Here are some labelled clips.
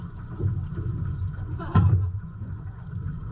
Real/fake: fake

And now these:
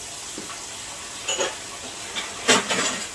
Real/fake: real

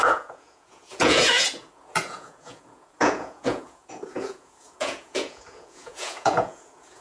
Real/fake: fake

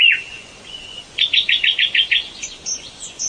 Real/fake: fake